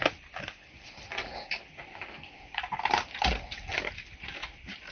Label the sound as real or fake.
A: real